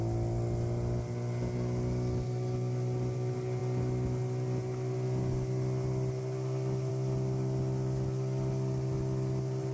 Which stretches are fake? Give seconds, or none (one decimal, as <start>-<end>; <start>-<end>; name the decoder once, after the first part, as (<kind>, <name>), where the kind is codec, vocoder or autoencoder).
none